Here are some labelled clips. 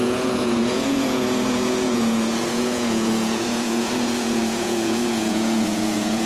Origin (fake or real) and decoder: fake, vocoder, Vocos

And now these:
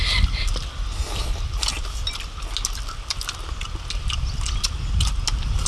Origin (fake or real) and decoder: real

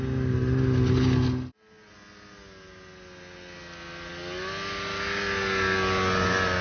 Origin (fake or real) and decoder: real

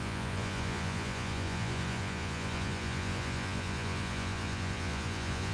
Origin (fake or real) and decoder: fake, vocoder, Vocos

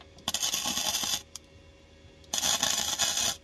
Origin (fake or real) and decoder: real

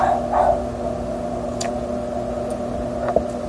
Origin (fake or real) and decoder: real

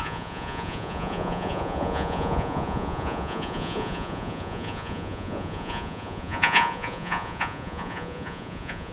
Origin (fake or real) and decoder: fake, vocoder, Vocos